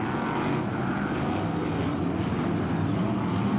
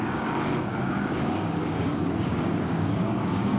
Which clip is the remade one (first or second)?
second